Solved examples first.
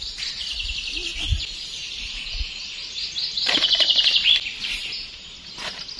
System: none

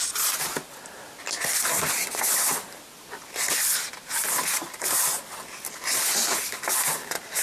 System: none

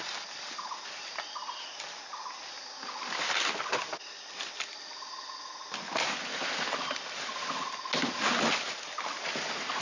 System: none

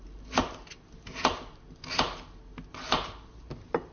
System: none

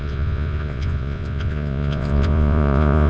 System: vocoder, Vocos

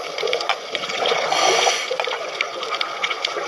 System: vocoder, Vocos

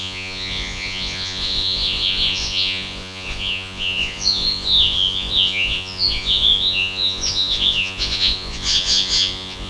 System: vocoder, Vocos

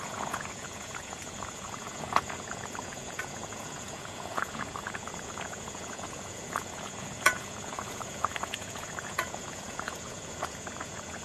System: vocoder, Vocos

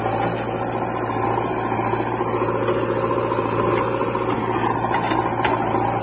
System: none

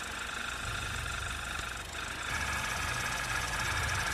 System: vocoder, Vocos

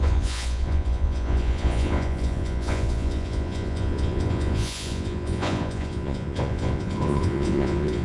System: vocoder, Vocos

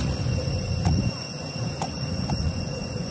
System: vocoder, Vocos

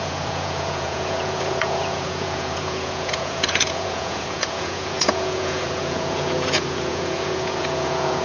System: vocoder, Vocos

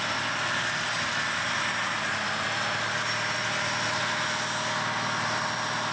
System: none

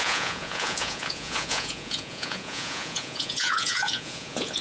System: vocoder, Vocos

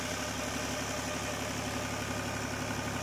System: none